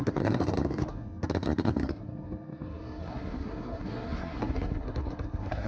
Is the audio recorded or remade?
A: remade